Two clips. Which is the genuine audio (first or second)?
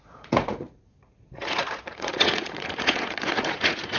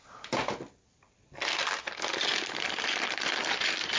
second